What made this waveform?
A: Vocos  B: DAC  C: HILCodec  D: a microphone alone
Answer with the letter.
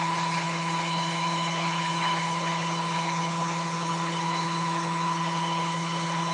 C